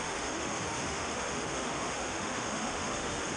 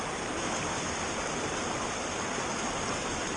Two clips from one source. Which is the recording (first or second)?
second